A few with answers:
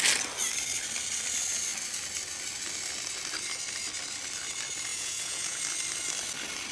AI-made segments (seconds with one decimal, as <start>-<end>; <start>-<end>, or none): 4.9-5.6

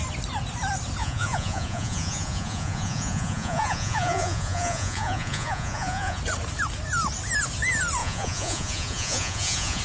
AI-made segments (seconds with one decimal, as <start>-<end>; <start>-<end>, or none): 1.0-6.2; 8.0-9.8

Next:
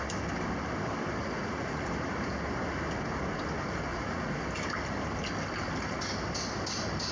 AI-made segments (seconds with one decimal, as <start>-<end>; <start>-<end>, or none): 1.2-1.9; 3.9-4.4

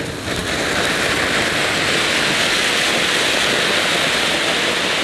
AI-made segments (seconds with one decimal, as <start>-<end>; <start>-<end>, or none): none

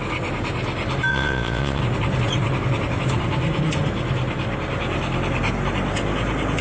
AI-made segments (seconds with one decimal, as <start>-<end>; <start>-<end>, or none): 1.1-1.8

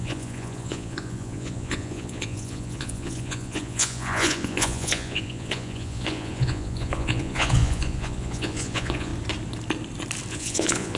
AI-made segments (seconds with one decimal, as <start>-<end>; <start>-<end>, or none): 0.0-9.1; 10.3-11.0

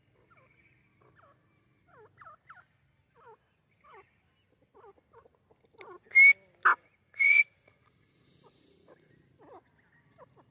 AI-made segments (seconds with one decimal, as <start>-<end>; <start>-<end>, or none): 6.7-9.1